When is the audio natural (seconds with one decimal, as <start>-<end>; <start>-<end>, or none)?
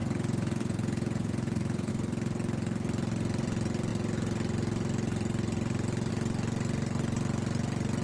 1.9-8.0